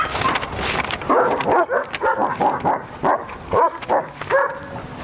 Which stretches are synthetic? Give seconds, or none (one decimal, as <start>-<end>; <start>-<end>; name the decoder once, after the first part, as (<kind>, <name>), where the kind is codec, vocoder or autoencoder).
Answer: 2.2-2.9 (vocoder, BigVGAN v2)